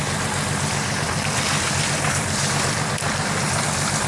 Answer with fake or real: real